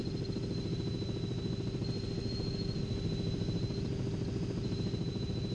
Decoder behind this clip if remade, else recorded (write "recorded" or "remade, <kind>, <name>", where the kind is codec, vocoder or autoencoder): recorded